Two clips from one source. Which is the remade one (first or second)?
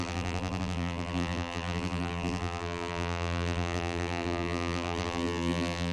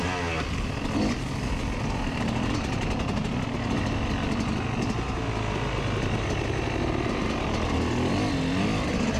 first